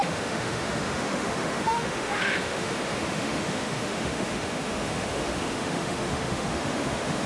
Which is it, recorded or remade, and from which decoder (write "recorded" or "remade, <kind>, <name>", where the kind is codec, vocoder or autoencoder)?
remade, autoencoder, DAC-VAE